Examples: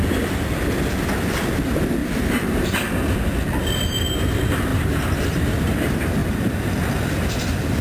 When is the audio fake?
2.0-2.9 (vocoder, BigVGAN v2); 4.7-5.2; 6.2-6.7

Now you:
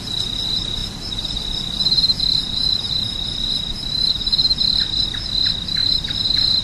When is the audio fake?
2.4-4.7 (vocoder, BigVGAN v2); 5.8-6.6

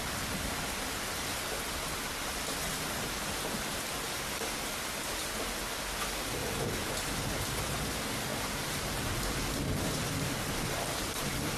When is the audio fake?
6.4-7.0 (vocoder, BigVGAN v2); 8.3-11.6